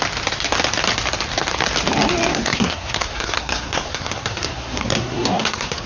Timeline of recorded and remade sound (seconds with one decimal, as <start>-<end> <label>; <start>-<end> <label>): 0.0-2.3 recorded; 2.3-5.9 remade

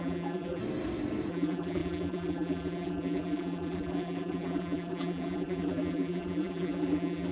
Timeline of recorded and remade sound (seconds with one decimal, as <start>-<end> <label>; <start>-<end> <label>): 0.0-0.6 remade; 0.6-1.3 recorded; 1.3-7.3 remade

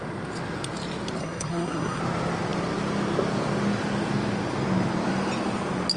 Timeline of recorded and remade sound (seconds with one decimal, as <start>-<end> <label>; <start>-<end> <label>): 0.0-1.2 recorded; 1.2-2.0 remade; 2.0-6.0 recorded

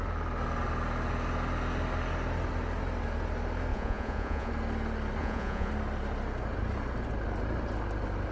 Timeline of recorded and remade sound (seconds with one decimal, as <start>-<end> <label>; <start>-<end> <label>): 0.0-3.7 recorded; 3.7-4.5 remade; 4.5-5.2 recorded; 5.2-5.7 remade; 5.7-8.3 recorded

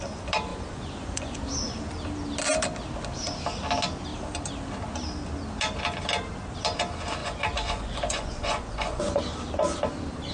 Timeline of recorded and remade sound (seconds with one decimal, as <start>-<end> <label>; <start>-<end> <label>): 0.0-0.5 recorded; 0.5-1.4 remade; 1.4-7.2 recorded; 7.2-9.2 remade; 9.2-10.3 recorded